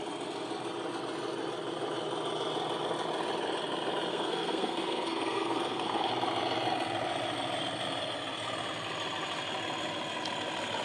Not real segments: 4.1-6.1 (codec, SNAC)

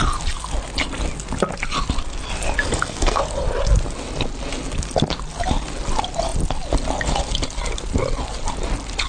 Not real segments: 2.7-3.2 (codec, SNAC)

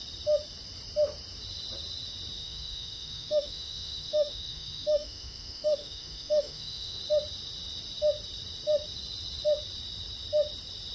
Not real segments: 2.4-7.0 (autoencoder, DAC-VAE)

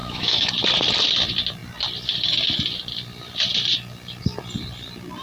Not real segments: 0.0-0.5 (autoencoder, DAC-VAE)

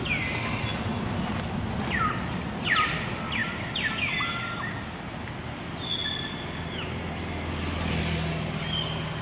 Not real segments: none